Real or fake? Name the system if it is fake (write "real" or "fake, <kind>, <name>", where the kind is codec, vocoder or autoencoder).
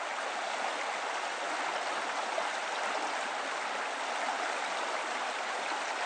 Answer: real